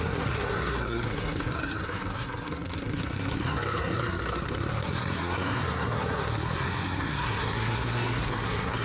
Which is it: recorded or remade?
remade